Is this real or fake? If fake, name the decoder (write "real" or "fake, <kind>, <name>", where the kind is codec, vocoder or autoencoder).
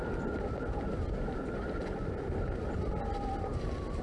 real